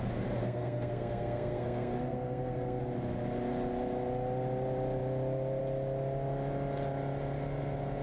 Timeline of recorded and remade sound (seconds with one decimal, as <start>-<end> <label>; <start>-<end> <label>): 0.0-0.4 recorded; 0.4-2.8 remade; 2.8-8.0 recorded